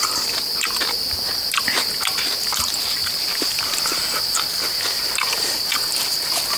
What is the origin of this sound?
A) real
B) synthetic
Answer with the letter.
A